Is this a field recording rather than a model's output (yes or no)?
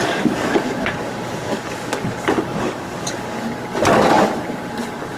no